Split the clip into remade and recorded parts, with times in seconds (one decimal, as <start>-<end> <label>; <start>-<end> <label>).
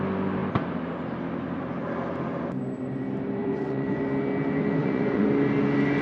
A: 0.0-3.4 recorded; 3.4-4.0 remade; 4.0-4.8 recorded; 4.8-5.3 remade; 5.3-6.0 recorded